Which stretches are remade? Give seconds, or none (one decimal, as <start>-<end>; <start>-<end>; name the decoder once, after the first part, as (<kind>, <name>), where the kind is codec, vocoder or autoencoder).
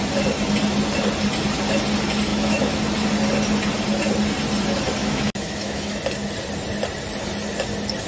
2.3-2.8 (autoencoder, DAC-VAE); 5.0-6.0